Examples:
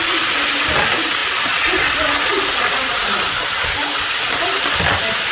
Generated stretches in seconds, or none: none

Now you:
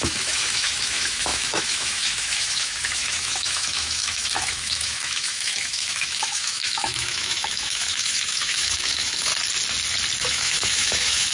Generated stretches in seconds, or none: 0.0-9.3 (autoencoder, DAC-VAE); 10.2-11.3

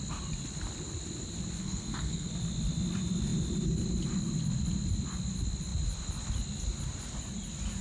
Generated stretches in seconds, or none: 1.6-2.3 (codec, SNAC)